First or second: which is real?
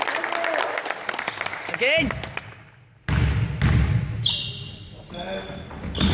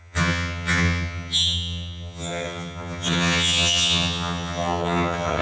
first